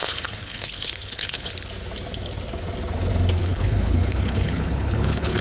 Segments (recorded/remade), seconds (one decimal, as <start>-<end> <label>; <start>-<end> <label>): 0.0-1.5 remade; 1.5-3.4 recorded; 3.4-5.4 remade